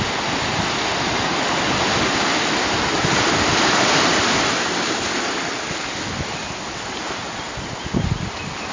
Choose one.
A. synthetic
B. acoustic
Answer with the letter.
B